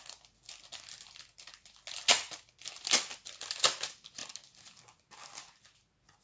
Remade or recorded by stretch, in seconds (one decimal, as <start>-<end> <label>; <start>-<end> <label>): 0.0-6.2 recorded